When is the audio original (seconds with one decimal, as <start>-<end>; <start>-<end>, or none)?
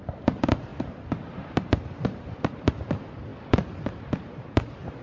3.3-4.2